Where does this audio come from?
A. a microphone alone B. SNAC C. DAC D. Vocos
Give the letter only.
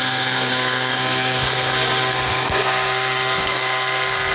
B